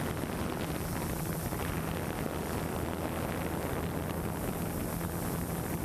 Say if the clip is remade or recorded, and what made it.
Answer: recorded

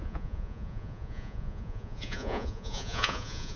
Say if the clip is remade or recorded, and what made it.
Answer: remade, vocoder, Vocos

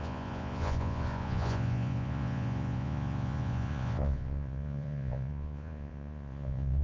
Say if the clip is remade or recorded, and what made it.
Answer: remade, vocoder, Vocos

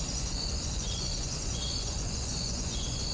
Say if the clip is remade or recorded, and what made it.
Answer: remade, vocoder, Vocos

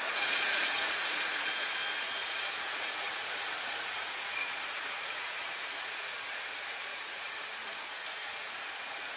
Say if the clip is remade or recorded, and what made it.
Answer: remade, vocoder, Vocos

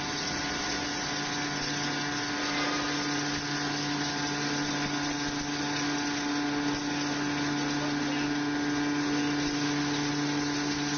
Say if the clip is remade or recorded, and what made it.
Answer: recorded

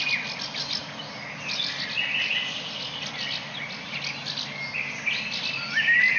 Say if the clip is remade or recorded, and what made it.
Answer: recorded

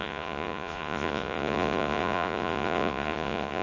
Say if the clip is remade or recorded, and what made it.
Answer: remade, vocoder, Vocos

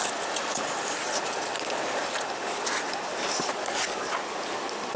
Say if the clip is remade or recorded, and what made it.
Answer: recorded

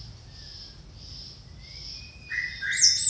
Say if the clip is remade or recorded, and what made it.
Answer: recorded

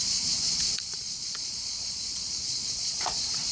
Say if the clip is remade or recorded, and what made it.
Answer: remade, vocoder, Vocos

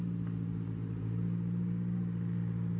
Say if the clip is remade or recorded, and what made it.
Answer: recorded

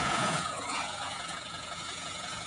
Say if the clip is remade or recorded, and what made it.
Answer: remade, vocoder, Vocos